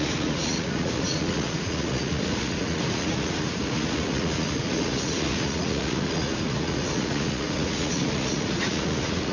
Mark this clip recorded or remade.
remade